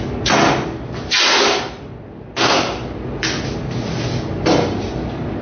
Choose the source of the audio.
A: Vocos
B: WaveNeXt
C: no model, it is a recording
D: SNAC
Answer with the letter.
C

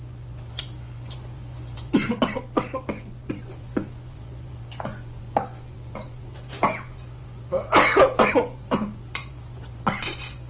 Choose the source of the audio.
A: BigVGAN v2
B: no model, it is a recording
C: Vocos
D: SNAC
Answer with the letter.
C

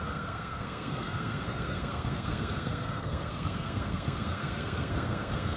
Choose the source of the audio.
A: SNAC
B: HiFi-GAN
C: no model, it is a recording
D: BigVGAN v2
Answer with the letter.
A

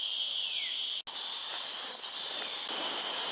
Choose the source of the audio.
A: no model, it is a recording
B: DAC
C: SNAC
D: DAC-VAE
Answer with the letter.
A